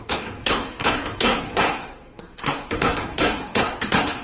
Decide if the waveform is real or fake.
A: fake